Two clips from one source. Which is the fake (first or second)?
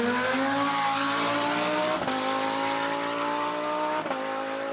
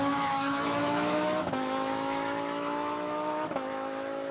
second